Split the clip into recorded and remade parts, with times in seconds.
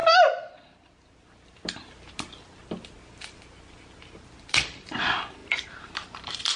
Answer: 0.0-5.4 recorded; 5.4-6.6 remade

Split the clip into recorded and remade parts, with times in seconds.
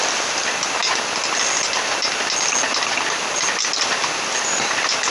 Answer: 0.0-5.1 recorded